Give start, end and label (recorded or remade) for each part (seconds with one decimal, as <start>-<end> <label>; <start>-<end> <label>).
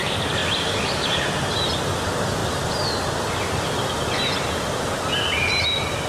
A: 0.0-0.4 recorded; 0.4-1.4 remade; 1.4-6.1 recorded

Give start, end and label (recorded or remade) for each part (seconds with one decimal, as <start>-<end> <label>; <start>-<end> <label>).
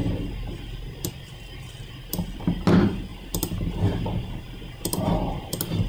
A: 0.0-5.9 recorded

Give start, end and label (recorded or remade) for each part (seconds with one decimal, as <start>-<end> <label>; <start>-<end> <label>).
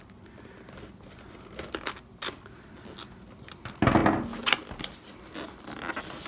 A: 0.0-6.3 recorded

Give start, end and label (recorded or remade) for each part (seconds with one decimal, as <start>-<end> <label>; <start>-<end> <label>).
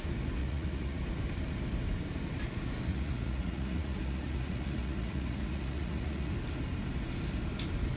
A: 0.0-0.4 recorded; 0.4-1.0 remade; 1.0-2.9 recorded; 2.9-6.3 remade; 6.3-8.0 recorded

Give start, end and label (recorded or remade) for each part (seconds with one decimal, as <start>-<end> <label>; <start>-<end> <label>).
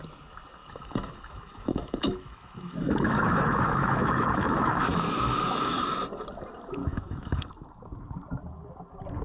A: 0.0-0.6 recorded; 0.6-5.8 remade; 5.8-6.8 recorded; 6.8-7.5 remade; 7.5-9.2 recorded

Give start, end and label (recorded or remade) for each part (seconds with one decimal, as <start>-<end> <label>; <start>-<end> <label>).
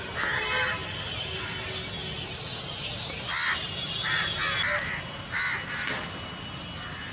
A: 0.0-7.1 recorded